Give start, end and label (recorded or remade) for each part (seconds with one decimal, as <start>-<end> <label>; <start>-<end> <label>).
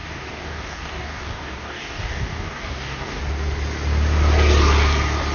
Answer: 0.0-3.2 remade; 3.2-5.3 recorded